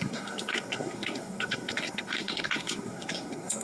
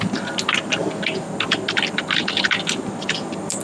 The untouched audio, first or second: second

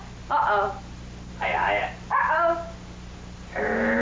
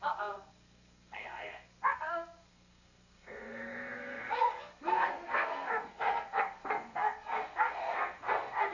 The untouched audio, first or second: first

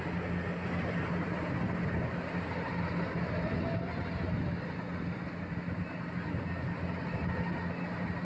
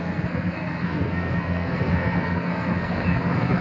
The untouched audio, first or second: first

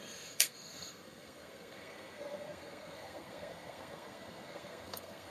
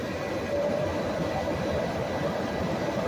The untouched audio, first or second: second